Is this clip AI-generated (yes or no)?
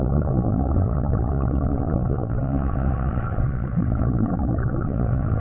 yes